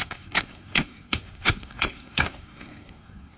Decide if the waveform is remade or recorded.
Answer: remade